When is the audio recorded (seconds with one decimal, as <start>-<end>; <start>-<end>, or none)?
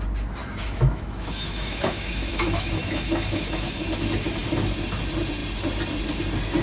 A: 0.0-0.4; 3.7-6.6